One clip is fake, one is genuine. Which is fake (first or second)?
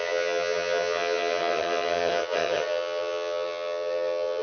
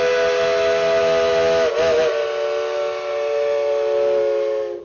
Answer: first